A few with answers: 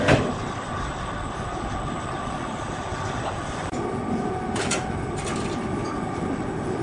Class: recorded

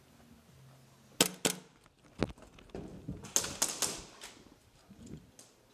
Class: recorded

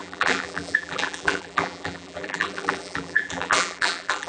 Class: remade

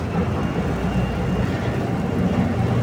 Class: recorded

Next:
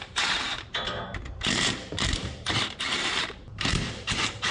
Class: remade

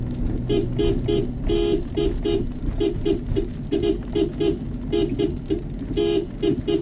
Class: recorded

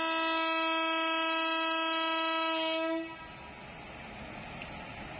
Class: recorded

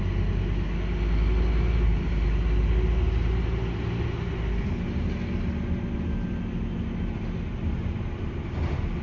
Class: recorded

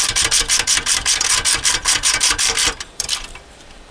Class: remade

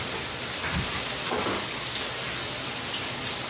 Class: recorded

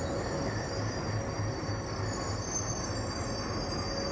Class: recorded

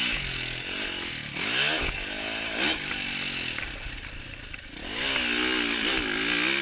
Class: recorded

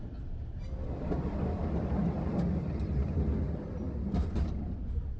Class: recorded